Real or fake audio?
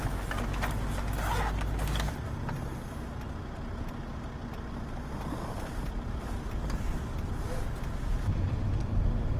real